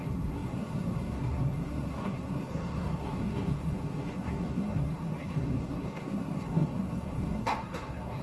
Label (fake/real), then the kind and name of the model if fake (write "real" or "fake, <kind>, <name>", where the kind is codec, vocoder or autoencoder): fake, codec, SNAC